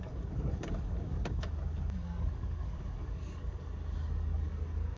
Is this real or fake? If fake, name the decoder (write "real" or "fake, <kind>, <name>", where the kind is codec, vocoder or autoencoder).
fake, codec, DAC